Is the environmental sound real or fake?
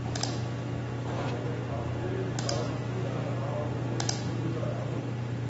real